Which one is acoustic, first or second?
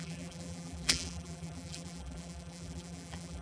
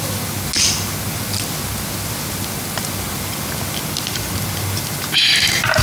second